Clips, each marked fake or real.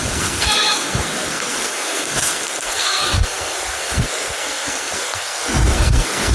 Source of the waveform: fake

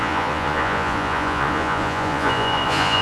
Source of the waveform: fake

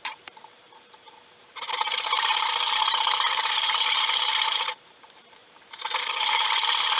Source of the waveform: fake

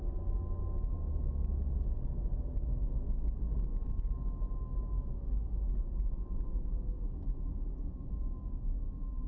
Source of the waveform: real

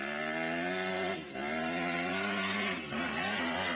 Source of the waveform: real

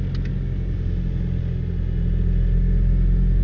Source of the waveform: real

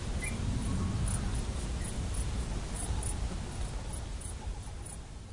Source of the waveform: real